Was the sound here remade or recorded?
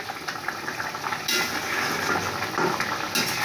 recorded